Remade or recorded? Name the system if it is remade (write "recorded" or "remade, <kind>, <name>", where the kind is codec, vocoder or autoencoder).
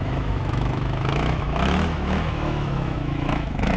remade, autoencoder, DAC-VAE